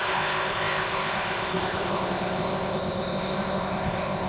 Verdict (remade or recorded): remade